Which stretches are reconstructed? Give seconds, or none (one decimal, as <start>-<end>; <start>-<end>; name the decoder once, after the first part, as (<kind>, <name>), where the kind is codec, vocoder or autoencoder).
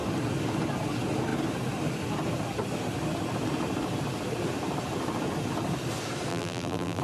6.3-7.0 (vocoder, BigVGAN v2)